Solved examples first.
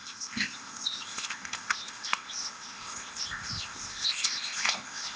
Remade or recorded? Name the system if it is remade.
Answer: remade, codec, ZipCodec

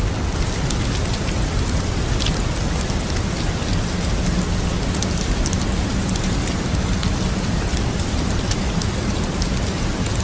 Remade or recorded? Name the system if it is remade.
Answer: recorded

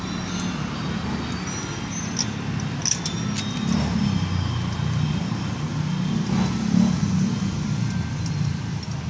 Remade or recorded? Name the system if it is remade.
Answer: recorded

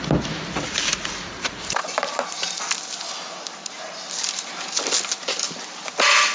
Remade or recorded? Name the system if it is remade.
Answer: recorded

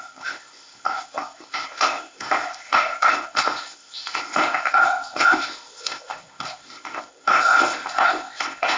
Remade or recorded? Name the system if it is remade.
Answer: remade, codec, ZipCodec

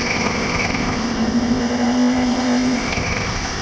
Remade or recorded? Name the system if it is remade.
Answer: remade, codec, ZipCodec